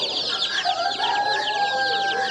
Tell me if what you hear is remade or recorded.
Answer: recorded